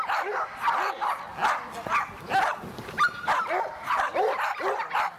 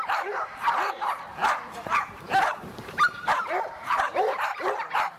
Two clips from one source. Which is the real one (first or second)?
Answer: first